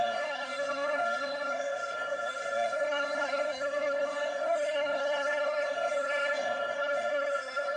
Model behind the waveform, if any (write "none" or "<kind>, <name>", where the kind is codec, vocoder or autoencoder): codec, SNAC